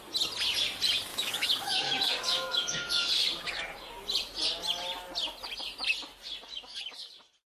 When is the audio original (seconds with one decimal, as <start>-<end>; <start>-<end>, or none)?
0.0-1.1; 3.6-6.5; 7.1-7.5